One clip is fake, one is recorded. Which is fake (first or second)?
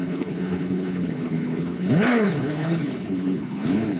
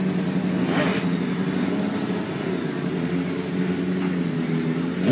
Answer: first